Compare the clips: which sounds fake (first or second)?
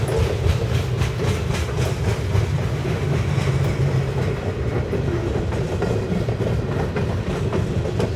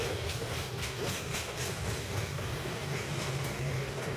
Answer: second